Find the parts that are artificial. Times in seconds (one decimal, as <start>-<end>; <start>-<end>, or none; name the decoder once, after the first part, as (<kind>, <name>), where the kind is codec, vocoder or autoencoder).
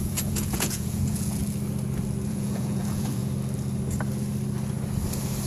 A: 0.0-1.4 (vocoder, Vocos); 2.3-3.2